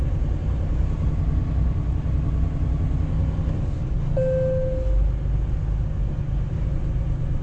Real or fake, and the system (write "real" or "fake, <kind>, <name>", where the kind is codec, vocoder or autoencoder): real